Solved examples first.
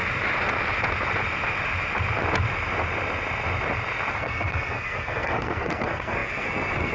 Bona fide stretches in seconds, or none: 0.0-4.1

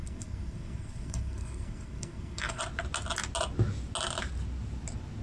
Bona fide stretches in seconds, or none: 2.6-5.2

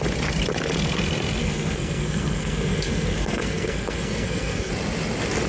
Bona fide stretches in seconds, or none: 0.0-1.4; 4.7-5.5